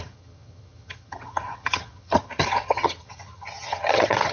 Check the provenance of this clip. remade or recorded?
remade